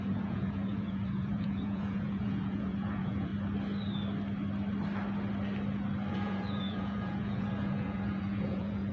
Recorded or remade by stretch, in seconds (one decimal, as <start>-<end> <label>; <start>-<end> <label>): 0.0-3.3 remade; 3.3-6.1 recorded; 6.1-8.9 remade